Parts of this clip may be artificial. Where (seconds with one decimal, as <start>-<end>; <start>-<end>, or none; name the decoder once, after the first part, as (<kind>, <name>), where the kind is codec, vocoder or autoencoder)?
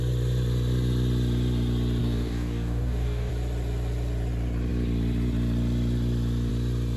2.0-3.3 (codec, DAC)